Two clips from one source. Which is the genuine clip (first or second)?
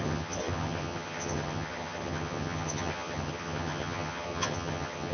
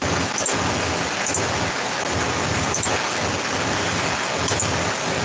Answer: second